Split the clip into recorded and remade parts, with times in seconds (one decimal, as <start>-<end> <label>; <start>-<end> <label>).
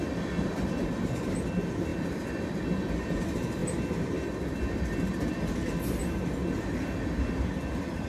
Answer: 0.0-8.1 recorded